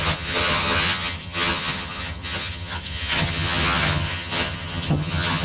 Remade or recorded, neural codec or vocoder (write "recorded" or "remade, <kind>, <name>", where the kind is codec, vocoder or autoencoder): remade, vocoder, HiFi-GAN